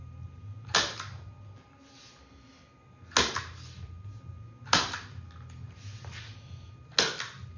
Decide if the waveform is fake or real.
real